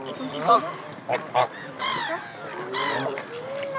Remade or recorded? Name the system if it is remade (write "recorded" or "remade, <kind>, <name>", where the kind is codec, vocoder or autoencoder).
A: recorded